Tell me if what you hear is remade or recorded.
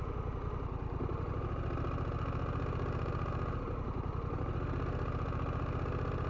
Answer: recorded